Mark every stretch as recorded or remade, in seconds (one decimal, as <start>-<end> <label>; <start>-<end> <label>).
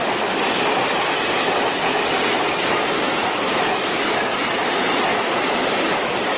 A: 0.0-5.1 recorded; 5.1-6.4 remade